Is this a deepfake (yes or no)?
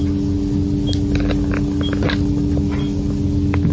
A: no